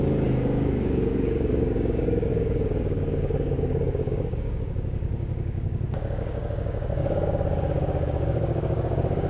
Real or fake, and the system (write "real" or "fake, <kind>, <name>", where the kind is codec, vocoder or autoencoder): fake, codec, DAC